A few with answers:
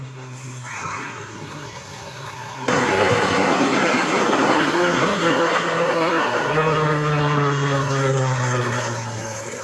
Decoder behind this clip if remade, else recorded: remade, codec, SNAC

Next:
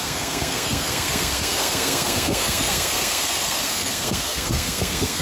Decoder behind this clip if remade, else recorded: remade, codec, SNAC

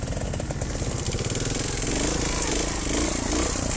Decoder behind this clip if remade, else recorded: recorded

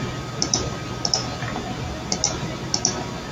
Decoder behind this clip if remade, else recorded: recorded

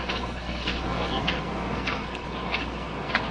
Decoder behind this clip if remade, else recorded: remade, codec, SNAC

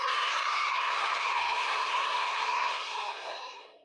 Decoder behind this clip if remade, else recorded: remade, codec, SNAC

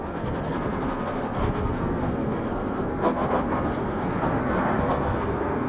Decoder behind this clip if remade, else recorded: remade, codec, SNAC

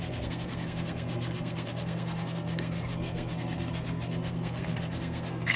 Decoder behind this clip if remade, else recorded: remade, codec, SNAC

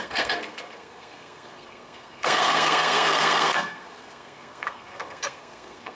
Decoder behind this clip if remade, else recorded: remade, codec, SNAC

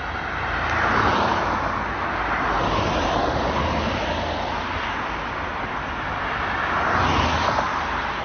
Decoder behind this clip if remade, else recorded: recorded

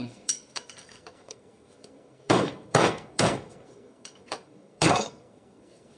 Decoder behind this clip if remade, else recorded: remade, codec, SNAC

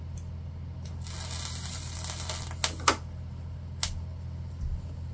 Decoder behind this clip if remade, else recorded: recorded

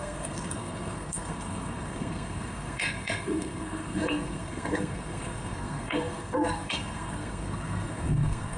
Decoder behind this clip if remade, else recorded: remade, codec, SNAC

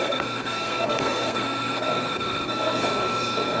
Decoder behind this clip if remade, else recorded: remade, codec, SNAC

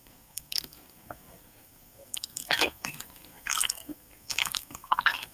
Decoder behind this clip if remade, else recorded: remade, codec, SNAC